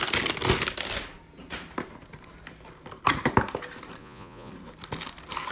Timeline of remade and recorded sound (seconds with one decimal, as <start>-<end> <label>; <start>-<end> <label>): 0.0-4.0 recorded; 4.0-4.5 remade; 4.5-5.5 recorded